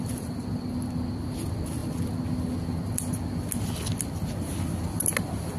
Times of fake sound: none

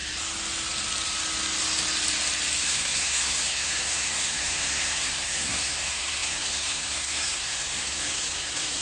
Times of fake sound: 2.6-8.8 (codec, SNAC)

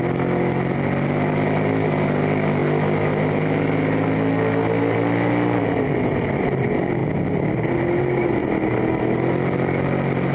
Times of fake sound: none

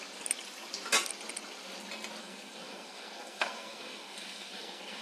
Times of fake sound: 2.2-5.0 (codec, SNAC)

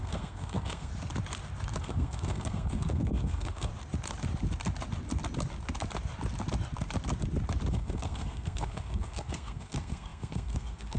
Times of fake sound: 0.0-0.9 (codec, SNAC); 1.8-3.7; 7.7-11.0